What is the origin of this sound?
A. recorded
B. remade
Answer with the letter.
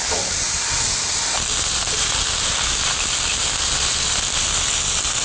A